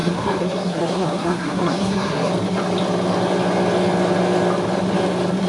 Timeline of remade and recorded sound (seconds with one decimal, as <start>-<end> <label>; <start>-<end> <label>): 0.0-2.3 remade; 2.3-5.5 recorded